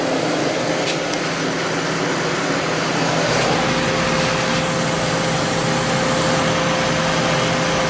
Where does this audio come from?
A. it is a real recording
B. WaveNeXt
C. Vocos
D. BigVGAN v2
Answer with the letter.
A